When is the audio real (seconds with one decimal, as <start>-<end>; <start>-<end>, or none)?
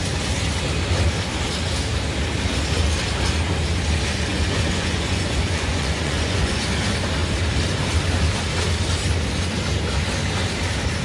0.0-4.3; 6.6-11.0